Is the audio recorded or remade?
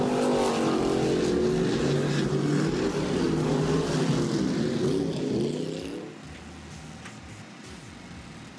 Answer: recorded